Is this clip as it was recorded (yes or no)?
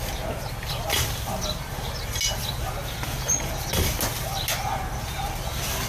yes